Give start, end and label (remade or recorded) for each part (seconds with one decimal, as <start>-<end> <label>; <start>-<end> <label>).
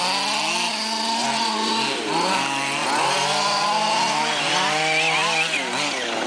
0.0-6.3 recorded